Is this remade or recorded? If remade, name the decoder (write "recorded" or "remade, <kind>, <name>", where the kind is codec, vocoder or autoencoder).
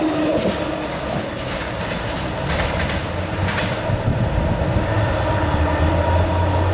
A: recorded